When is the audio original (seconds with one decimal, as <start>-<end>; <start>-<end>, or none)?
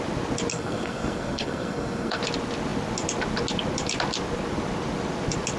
0.0-0.5; 2.2-5.6